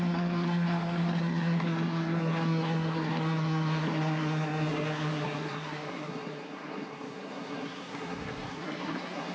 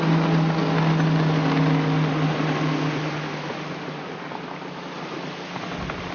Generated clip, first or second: first